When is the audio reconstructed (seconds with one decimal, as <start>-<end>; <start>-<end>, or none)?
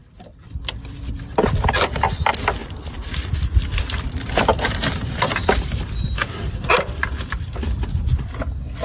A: 0.0-1.7; 2.6-7.8